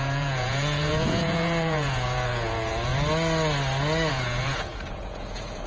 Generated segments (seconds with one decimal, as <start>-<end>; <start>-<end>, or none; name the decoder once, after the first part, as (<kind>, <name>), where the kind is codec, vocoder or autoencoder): 0.0-2.9 (vocoder, Vocos); 4.1-5.7